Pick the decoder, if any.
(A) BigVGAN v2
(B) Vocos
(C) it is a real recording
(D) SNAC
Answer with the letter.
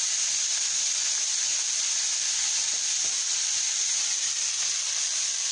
C